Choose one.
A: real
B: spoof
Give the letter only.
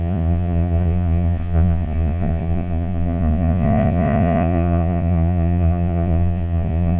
B